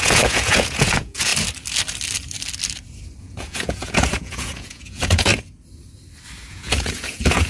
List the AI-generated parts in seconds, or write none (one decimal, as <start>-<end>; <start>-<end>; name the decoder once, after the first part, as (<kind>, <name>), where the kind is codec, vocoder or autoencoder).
0.0-1.3 (vocoder, Vocos); 3.2-5.3; 6.5-7.5